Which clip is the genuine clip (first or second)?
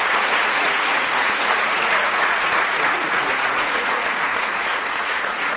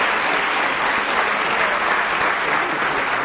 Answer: second